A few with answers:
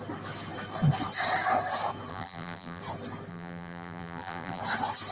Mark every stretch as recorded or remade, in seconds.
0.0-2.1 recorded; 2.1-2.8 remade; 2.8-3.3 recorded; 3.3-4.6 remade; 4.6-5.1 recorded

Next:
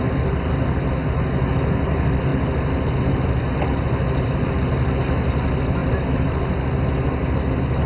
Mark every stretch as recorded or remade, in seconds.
0.0-5.8 recorded; 5.8-6.4 remade; 6.4-7.9 recorded

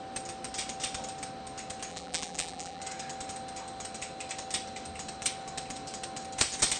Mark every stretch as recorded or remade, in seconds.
0.0-1.9 recorded; 1.9-2.8 remade; 2.8-6.8 recorded